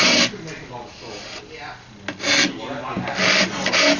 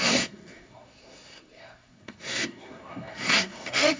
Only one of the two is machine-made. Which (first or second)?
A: second